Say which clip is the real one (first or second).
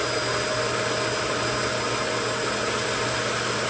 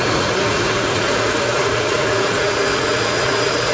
first